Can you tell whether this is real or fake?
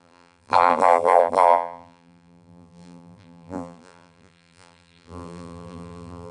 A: fake